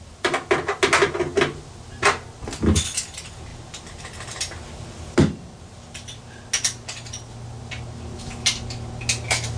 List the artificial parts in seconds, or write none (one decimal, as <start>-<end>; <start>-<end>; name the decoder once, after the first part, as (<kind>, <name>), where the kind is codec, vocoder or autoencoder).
none